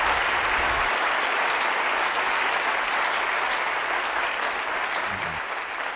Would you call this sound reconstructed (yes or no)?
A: no